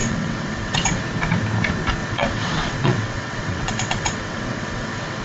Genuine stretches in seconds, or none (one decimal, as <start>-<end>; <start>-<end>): 1.0-2.0